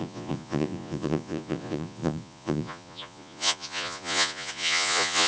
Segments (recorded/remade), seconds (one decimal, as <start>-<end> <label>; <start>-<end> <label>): 0.0-5.3 remade